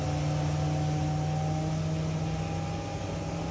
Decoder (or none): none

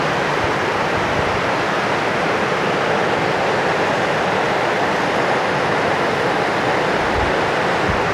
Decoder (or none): none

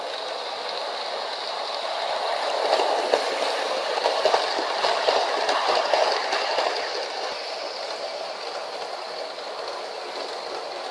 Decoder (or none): none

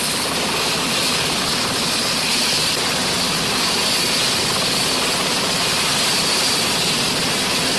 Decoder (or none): vocoder, BigVGAN v2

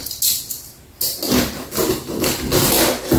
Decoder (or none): none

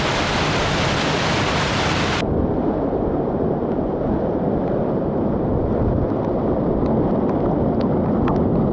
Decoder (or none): none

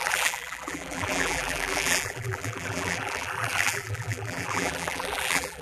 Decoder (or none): vocoder, BigVGAN v2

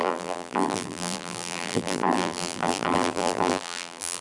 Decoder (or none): vocoder, BigVGAN v2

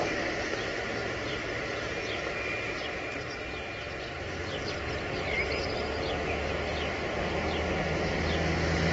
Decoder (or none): none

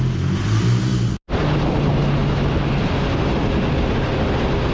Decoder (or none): none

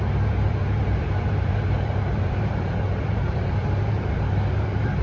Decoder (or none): vocoder, BigVGAN v2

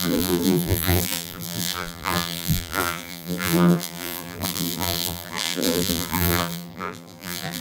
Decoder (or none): vocoder, BigVGAN v2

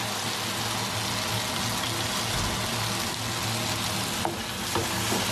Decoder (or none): none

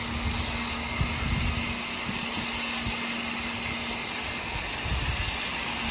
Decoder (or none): none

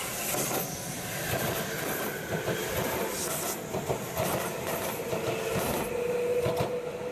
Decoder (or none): none